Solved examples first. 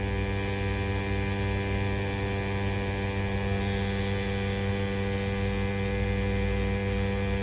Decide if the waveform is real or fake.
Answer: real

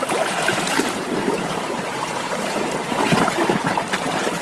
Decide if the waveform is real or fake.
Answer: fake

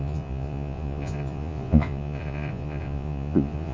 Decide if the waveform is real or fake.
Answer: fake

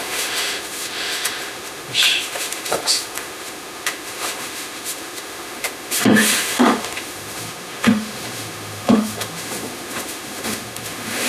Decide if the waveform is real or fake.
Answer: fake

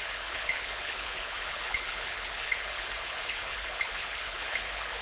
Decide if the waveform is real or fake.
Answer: fake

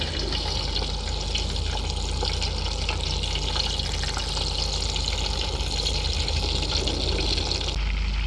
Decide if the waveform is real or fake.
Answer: real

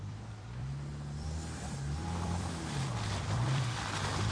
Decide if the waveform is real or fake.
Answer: fake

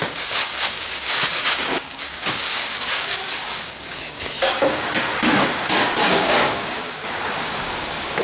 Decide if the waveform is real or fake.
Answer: fake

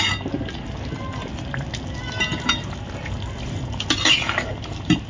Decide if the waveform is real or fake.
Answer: real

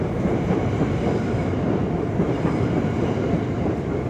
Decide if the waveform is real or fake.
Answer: fake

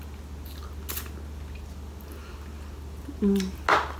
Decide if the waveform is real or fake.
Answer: real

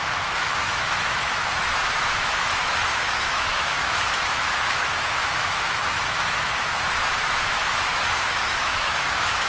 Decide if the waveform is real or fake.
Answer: fake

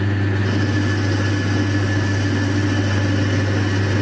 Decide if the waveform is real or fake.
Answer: real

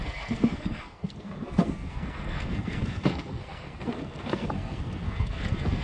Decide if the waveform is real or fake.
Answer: fake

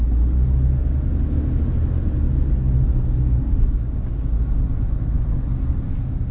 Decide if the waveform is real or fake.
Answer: real